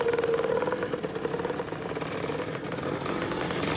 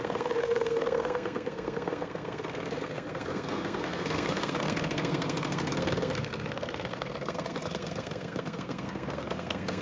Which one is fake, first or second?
second